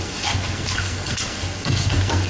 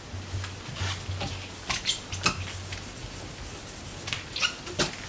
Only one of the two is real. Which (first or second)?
second